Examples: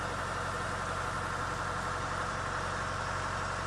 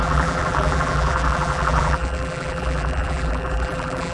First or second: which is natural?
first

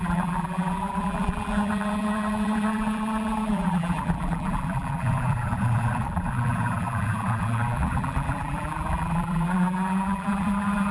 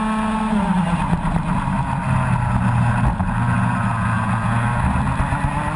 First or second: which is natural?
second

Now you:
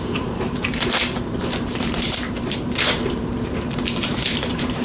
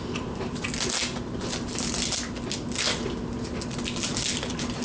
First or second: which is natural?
second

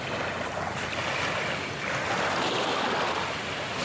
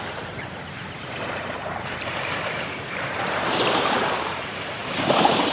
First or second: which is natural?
first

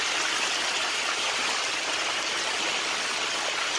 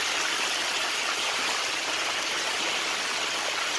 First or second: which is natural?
first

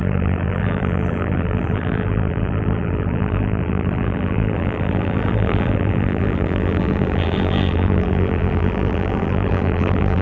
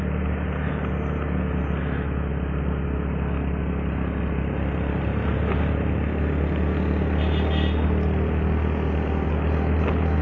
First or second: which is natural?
second